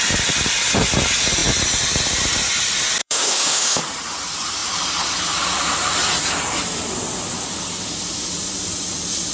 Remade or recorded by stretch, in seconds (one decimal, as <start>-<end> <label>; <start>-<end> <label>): 0.0-3.0 recorded; 3.0-3.8 remade; 3.8-9.3 recorded